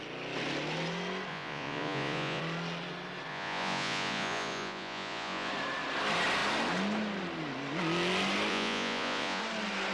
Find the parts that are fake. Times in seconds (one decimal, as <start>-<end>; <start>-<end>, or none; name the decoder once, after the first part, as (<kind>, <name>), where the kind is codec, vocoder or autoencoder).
1.3-2.4 (vocoder, Vocos); 3.3-5.5; 8.5-9.4